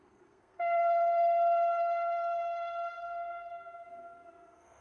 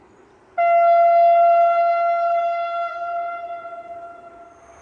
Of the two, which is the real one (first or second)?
second